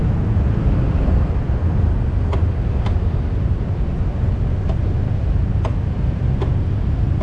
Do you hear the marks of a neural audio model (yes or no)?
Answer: no